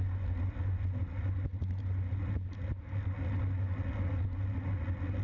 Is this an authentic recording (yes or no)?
yes